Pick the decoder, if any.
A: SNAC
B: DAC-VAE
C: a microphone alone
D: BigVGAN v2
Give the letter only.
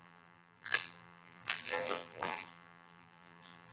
D